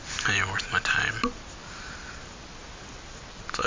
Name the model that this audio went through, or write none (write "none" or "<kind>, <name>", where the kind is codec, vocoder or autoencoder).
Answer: none